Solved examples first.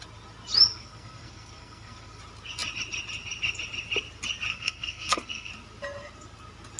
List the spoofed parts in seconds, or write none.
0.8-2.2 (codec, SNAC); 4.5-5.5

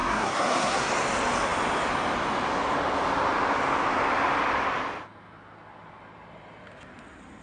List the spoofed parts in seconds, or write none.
0.0-0.9 (codec, SNAC)

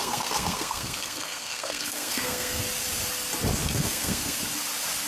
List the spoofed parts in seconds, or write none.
0.0-2.6 (codec, SNAC); 3.6-4.4

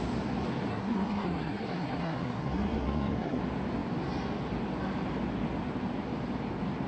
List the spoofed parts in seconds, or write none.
0.7-3.4 (codec, SNAC)